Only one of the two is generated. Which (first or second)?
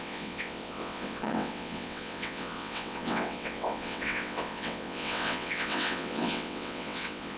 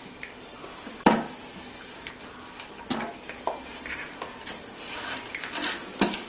first